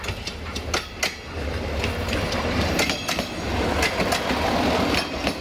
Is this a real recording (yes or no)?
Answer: yes